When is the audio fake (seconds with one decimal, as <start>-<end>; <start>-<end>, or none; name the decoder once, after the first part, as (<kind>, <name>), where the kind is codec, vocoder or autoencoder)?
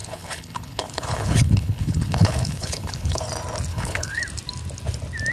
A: 0.0-3.2 (codec, HILCodec); 3.7-4.2